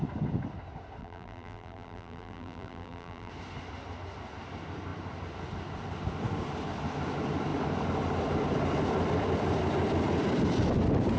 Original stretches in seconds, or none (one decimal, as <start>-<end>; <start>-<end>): 0.0-1.0; 3.3-11.2